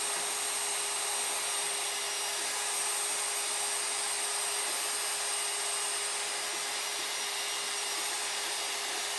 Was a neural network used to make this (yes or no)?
no